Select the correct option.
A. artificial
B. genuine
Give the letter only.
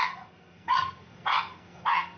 A